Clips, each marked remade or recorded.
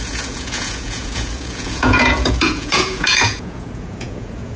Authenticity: remade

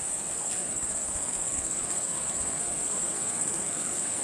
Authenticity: remade